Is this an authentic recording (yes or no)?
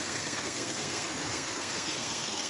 no